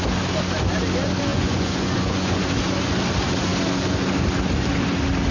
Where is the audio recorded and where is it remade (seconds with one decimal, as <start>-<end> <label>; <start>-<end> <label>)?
0.0-1.3 recorded; 1.3-2.4 remade; 2.4-5.3 recorded